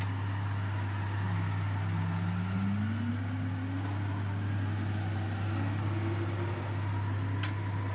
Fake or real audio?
real